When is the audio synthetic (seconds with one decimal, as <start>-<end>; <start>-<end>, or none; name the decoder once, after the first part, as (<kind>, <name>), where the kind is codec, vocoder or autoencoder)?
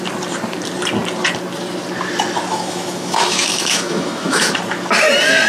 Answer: 2.5-4.6 (autoencoder, DAC-VAE)